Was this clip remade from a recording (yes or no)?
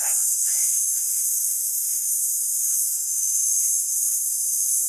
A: yes